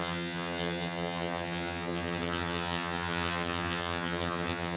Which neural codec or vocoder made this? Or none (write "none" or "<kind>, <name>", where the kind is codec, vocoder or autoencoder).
vocoder, HiFi-GAN